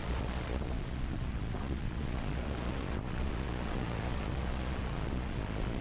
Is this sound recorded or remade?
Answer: remade